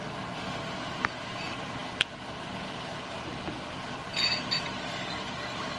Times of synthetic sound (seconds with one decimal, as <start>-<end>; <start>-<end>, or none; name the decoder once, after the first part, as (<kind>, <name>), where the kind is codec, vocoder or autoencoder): none